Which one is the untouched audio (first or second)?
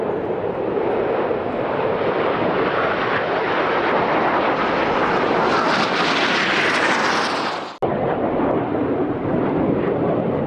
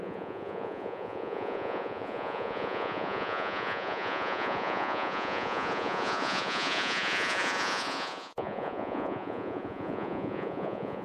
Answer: first